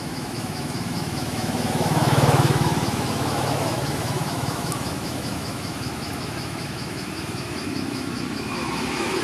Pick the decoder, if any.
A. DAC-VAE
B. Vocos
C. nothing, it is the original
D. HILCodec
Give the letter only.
A